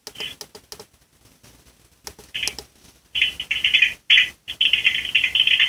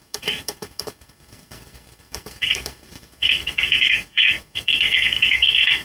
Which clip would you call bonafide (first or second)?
first